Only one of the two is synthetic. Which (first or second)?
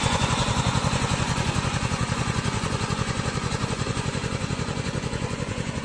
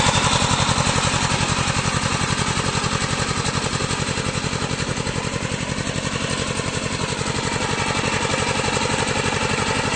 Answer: first